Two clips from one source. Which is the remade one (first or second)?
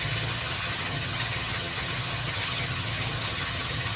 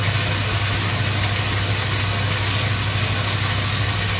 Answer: first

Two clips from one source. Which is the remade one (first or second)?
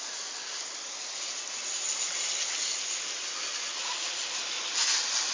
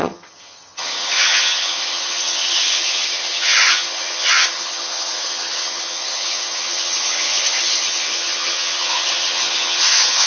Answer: second